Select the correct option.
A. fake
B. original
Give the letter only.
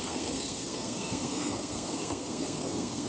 A